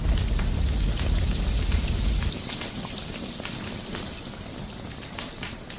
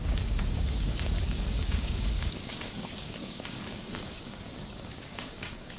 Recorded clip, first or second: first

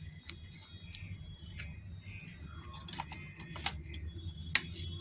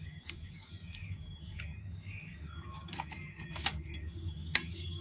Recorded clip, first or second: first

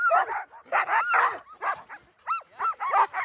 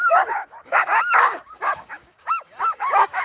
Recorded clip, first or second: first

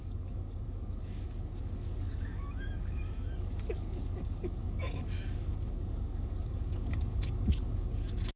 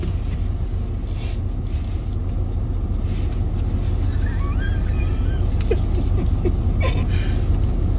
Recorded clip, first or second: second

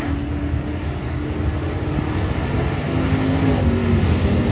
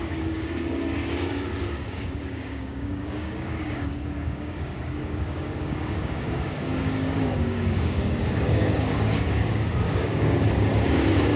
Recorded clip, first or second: first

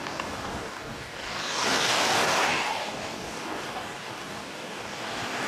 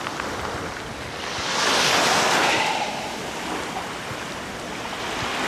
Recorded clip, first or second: second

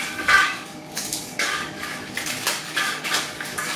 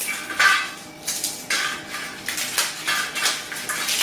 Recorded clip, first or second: second